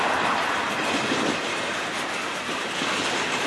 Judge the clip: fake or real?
real